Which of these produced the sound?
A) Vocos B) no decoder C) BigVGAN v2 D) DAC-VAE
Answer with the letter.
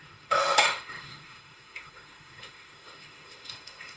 D